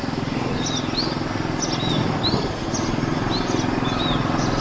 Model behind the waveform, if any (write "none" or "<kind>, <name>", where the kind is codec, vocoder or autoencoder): none